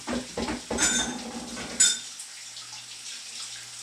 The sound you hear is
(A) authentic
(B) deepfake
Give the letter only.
A